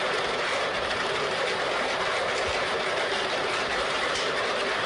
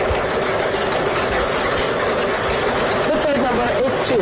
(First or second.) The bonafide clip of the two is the second